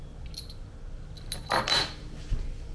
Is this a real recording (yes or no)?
yes